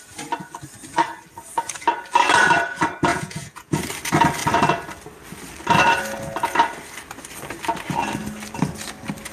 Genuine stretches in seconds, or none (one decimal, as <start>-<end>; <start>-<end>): 0.0-3.1; 3.8-9.3